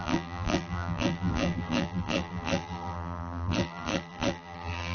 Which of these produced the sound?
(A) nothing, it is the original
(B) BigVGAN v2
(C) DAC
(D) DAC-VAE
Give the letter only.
B